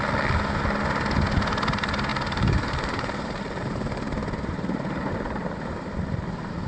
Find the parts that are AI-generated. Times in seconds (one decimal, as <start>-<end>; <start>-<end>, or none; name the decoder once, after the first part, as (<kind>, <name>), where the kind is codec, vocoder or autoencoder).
2.1-5.1 (vocoder, BigVGAN v2)